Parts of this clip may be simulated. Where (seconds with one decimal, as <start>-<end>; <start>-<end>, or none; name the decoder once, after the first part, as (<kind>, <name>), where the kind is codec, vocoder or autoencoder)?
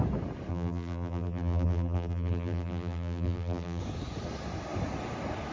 0.5-3.8 (vocoder, BigVGAN v2)